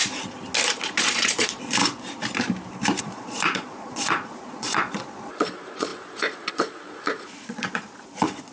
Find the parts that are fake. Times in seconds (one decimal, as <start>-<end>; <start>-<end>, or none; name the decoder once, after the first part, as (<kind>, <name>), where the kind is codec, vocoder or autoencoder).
0.7-1.8 (vocoder, Vocos); 3.0-8.5